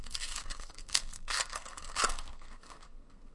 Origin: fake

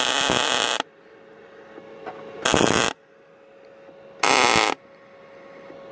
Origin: real